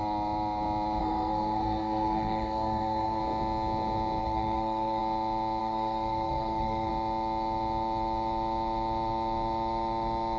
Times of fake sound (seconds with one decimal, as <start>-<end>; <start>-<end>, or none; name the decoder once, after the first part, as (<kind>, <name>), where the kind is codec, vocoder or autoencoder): 1.0-3.2 (codec, SNAC); 4.2-5.0; 5.6-6.9